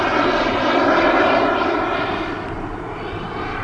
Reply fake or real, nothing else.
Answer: fake